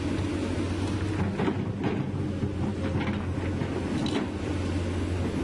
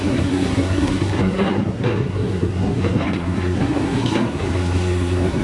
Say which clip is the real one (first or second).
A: first